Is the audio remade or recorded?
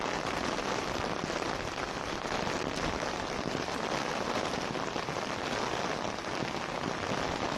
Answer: recorded